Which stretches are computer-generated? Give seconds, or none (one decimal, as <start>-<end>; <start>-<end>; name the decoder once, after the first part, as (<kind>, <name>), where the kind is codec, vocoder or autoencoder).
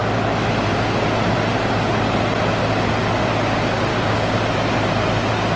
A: 3.9-4.4 (codec, DAC)